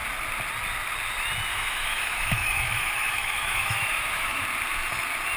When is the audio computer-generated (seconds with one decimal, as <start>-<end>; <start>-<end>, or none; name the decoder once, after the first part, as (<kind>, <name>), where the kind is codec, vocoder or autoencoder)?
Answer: 1.5-4.4 (autoencoder, DAC-VAE)